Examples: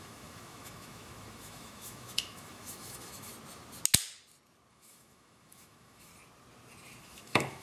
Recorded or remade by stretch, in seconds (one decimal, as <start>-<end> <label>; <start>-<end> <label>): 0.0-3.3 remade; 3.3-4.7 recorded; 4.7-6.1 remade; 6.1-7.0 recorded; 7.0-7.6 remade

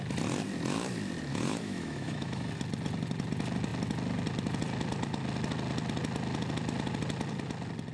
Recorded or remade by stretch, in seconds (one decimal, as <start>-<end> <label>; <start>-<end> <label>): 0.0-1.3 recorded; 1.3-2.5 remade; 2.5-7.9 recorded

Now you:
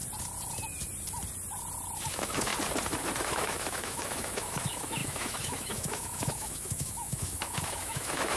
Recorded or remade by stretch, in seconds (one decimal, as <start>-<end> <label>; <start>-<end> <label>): 0.0-2.1 recorded; 2.1-2.5 remade; 2.5-3.2 recorded; 3.2-8.4 remade

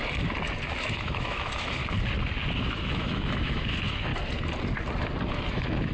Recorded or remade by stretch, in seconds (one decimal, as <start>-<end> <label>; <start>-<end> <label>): 0.0-0.8 recorded; 0.8-1.8 remade; 1.8-2.5 recorded; 2.5-4.1 remade; 4.1-5.5 recorded; 5.5-5.9 remade

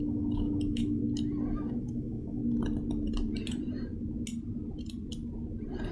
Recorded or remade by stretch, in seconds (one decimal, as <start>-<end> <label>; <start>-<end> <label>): 0.0-1.0 remade; 1.0-1.5 recorded; 1.5-2.4 remade; 2.4-5.9 recorded